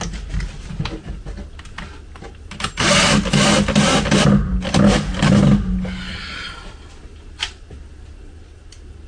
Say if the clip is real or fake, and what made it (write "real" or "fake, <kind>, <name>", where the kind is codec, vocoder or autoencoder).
real